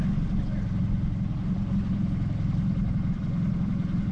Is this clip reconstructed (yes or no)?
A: no